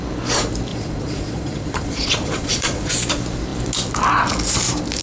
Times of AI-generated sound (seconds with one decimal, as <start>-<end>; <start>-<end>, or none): 0.7-2.9